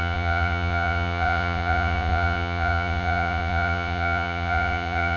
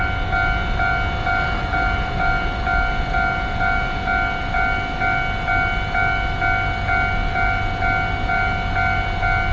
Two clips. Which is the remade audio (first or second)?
first